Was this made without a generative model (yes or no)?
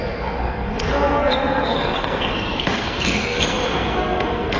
no